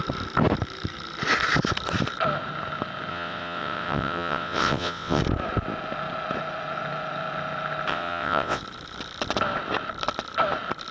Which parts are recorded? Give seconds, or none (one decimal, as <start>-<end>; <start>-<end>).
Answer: 0.0-3.1; 5.2-7.9; 8.6-10.9